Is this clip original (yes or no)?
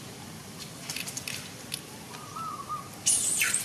yes